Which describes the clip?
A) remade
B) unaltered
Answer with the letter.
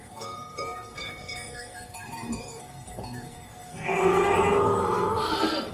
A